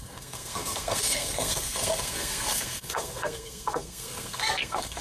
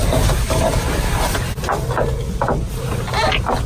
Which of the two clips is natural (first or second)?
second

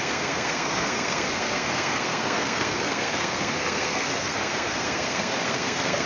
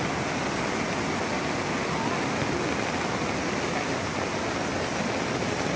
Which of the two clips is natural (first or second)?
second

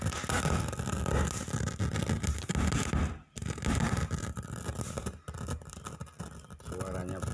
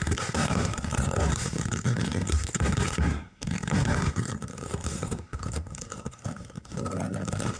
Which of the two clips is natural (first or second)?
first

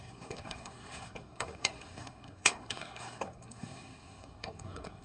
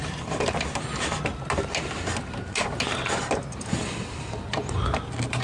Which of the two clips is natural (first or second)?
second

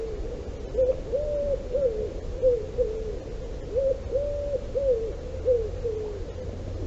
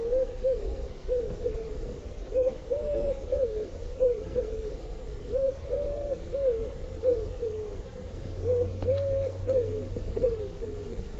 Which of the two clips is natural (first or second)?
first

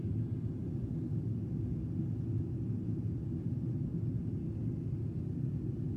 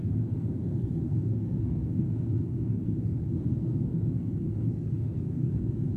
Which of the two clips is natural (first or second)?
first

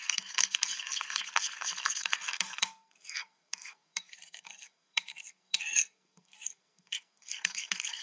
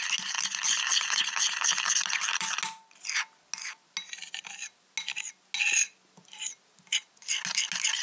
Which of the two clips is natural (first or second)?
second